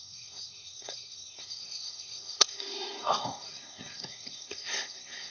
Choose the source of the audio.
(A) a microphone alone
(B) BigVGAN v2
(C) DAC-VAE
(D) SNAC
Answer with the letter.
D